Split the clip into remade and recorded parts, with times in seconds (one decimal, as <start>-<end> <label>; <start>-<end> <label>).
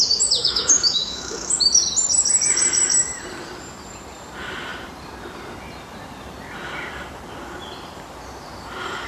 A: 0.0-0.4 recorded; 0.4-1.5 remade; 1.5-9.1 recorded